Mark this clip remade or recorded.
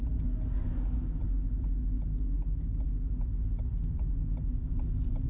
recorded